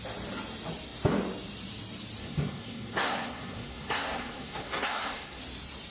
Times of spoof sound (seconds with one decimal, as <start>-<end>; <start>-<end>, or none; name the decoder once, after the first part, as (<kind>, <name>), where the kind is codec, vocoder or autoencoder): 2.2-5.4 (codec, SNAC)